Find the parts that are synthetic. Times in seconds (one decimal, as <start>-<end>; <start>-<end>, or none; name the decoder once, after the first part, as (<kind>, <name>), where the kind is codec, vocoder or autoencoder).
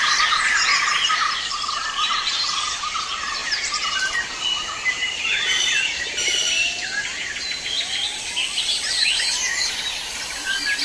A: 0.0-3.4 (vocoder, BigVGAN v2); 4.9-6.4; 9.2-10.8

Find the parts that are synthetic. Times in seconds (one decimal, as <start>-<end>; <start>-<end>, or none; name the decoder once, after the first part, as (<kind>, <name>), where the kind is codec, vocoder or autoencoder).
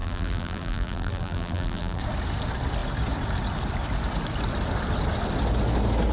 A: 0.0-2.0 (vocoder, BigVGAN v2)